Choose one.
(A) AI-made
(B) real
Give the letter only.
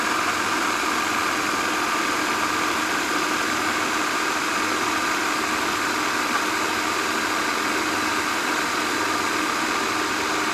B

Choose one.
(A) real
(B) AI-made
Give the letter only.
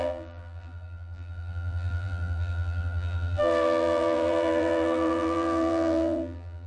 B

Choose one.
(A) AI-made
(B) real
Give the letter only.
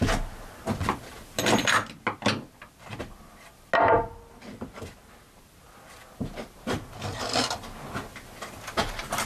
B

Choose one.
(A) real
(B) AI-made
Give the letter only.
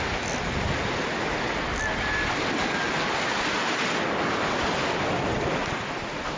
A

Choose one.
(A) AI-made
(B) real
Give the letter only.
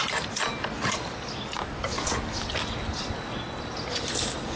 B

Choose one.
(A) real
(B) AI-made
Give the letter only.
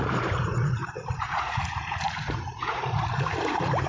B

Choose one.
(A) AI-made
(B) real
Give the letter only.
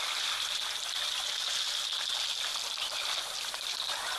B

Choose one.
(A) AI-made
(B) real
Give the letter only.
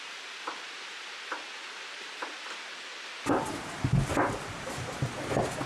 B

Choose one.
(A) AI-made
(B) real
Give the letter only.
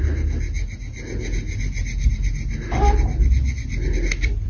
B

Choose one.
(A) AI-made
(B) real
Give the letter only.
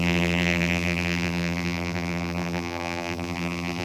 A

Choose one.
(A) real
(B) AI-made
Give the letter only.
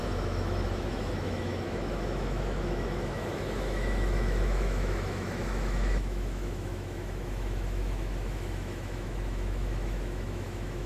B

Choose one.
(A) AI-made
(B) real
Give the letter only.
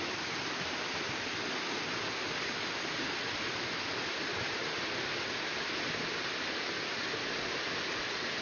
B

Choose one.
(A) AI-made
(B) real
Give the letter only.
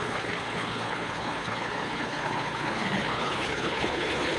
A